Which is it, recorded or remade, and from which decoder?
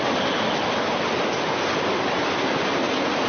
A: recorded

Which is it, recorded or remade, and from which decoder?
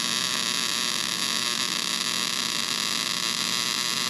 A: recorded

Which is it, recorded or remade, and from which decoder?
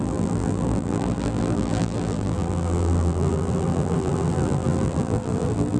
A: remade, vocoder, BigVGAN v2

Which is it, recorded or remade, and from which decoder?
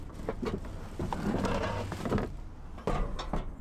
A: recorded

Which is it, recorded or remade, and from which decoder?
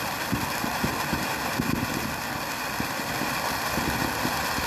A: recorded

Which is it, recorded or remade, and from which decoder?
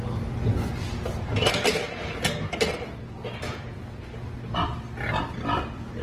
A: recorded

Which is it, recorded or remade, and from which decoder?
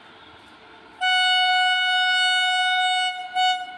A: recorded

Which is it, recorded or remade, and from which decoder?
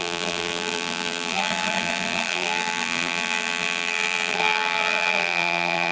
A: remade, vocoder, BigVGAN v2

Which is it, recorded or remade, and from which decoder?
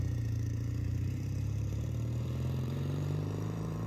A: remade, vocoder, BigVGAN v2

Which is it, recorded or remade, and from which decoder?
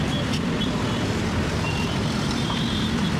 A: remade, vocoder, BigVGAN v2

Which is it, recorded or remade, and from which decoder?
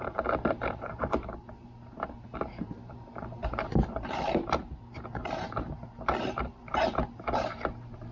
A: remade, vocoder, BigVGAN v2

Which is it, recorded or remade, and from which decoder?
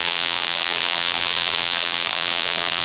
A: remade, vocoder, BigVGAN v2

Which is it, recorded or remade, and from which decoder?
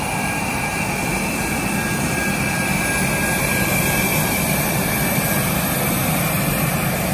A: recorded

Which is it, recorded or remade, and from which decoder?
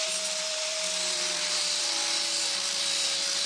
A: remade, vocoder, BigVGAN v2